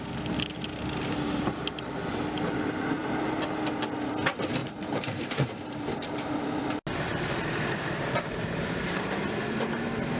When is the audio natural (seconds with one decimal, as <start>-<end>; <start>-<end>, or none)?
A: 0.0-4.6; 6.6-7.1